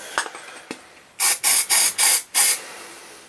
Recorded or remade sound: recorded